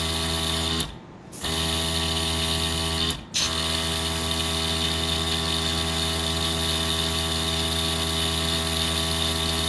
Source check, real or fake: real